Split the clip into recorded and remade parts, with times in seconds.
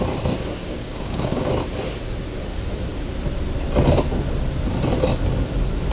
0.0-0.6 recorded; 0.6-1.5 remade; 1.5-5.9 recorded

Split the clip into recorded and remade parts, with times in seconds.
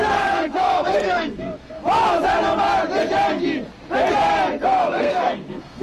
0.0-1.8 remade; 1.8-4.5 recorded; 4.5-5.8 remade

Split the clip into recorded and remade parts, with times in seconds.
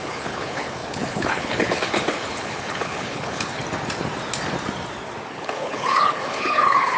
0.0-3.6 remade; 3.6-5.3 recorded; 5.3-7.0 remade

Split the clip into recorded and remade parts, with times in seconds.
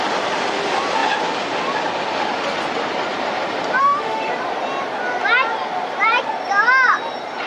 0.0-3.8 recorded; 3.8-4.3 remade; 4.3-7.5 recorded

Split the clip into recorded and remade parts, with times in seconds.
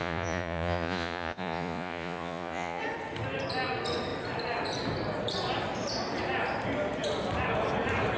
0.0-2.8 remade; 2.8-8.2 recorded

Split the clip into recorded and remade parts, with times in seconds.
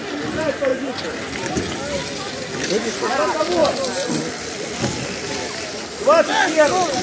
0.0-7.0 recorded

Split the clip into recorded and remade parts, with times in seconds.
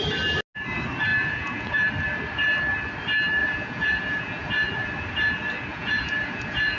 0.0-1.1 recorded; 1.1-1.9 remade; 1.9-3.4 recorded; 3.4-4.7 remade; 4.7-5.7 recorded; 5.7-6.8 remade